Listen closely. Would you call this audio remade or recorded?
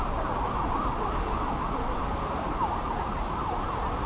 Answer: recorded